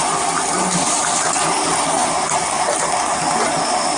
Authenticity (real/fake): real